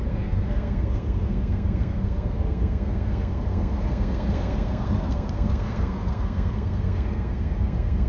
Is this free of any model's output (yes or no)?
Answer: no